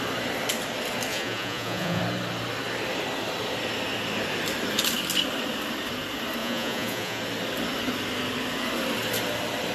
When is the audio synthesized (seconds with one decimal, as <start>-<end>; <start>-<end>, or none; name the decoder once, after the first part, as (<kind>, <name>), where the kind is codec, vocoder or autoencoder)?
1.1-2.0 (vocoder, Vocos); 6.4-7.2